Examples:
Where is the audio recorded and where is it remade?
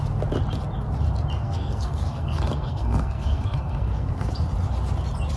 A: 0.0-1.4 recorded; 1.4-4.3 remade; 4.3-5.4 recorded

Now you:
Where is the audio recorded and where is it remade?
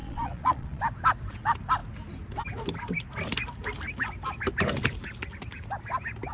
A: 0.0-0.8 remade; 0.8-6.3 recorded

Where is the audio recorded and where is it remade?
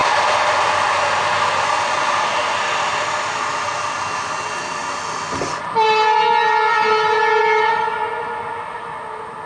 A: 0.0-9.5 recorded